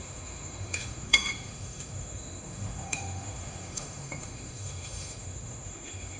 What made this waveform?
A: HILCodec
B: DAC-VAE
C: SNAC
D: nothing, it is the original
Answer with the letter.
B